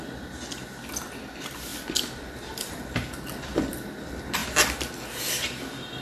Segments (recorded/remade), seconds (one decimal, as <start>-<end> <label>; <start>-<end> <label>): 0.0-6.0 recorded